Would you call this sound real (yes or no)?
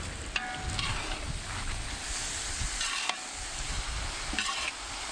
yes